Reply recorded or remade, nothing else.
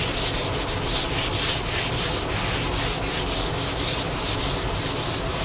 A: recorded